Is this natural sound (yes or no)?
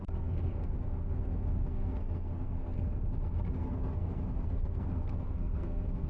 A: no